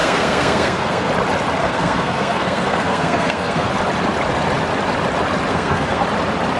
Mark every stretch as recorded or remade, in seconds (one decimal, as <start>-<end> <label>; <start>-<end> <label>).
0.0-1.1 remade; 1.1-1.6 recorded; 1.6-3.7 remade; 3.7-5.5 recorded; 5.5-6.0 remade; 6.0-6.6 recorded